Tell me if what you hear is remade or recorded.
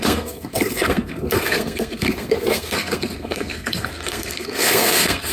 remade